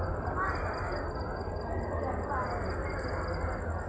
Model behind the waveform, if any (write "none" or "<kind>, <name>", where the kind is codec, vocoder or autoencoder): none